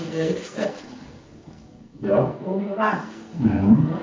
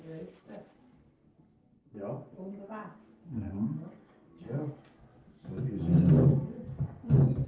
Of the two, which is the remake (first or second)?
first